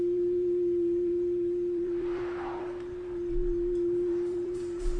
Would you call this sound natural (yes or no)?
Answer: no